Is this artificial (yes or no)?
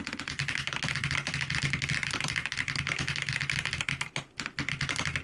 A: no